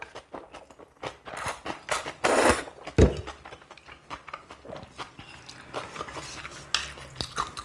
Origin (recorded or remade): recorded